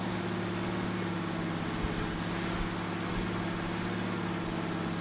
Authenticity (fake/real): real